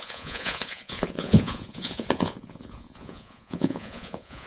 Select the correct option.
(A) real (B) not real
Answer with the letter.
B